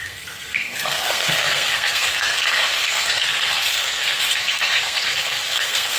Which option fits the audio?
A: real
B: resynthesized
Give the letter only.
B